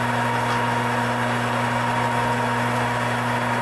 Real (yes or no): yes